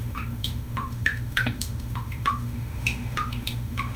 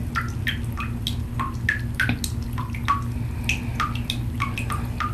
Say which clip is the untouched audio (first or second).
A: second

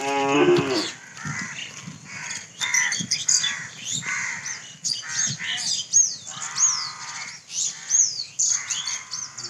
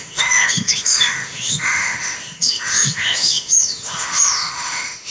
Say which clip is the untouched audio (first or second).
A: first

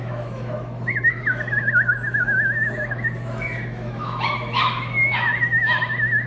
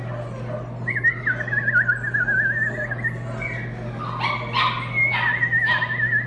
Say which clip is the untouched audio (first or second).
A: second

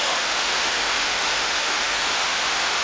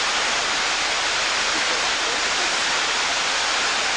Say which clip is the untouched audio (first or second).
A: second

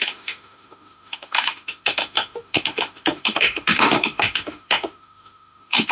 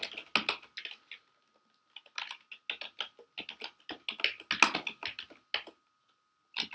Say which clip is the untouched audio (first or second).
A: second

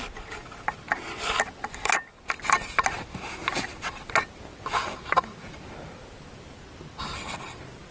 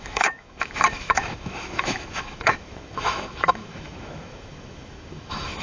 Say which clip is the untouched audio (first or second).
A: first